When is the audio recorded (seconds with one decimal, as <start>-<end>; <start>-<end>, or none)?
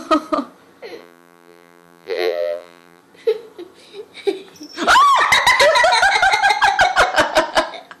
0.0-1.0; 3.0-8.0